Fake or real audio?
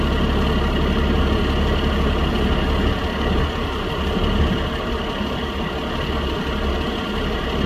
real